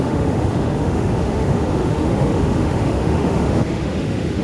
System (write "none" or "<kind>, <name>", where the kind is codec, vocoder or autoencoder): autoencoder, DAC-VAE